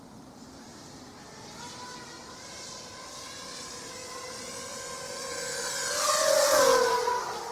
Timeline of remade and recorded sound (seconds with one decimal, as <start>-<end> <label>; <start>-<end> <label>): 0.0-7.5 recorded